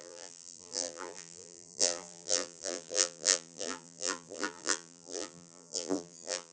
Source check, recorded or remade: remade